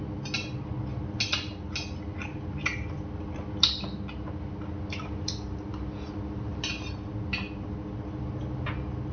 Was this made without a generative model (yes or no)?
yes